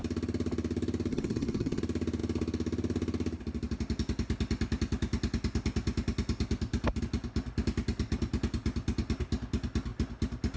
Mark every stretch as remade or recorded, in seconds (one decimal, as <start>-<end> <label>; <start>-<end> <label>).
0.0-1.1 recorded; 1.1-1.8 remade; 1.8-10.6 recorded